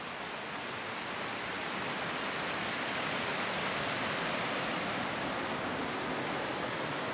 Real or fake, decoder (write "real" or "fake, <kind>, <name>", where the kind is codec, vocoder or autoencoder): real